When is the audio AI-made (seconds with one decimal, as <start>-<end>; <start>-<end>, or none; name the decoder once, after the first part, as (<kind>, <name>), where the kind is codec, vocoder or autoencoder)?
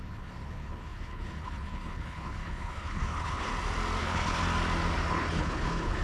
0.0-3.5 (codec, HILCodec); 4.0-4.4; 5.1-6.0